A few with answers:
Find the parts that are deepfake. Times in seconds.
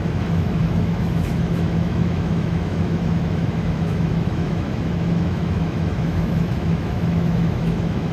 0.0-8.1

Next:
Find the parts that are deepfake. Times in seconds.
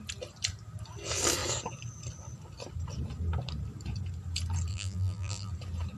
4.7-5.5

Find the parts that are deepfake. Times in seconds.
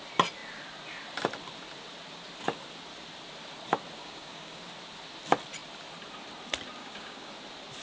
4.0-4.6; 6.8-7.3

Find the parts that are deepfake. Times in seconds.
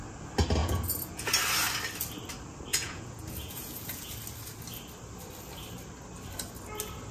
0.6-1.3; 2.7-4.1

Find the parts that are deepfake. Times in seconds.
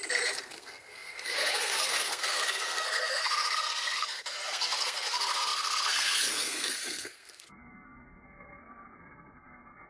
0.0-9.9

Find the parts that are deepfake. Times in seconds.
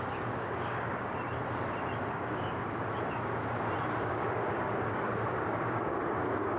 0.0-1.1; 2.1-2.6; 4.0-6.6